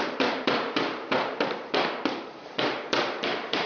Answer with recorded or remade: remade